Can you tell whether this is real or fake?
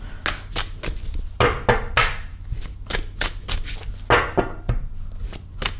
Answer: real